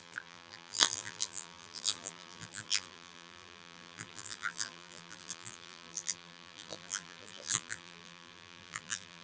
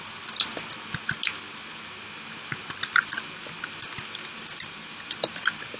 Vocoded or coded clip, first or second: first